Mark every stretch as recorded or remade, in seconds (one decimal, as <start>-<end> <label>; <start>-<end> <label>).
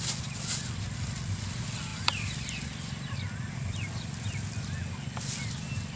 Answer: 0.0-6.0 recorded